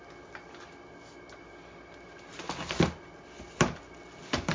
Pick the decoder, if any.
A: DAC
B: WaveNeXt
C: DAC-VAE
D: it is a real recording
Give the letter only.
D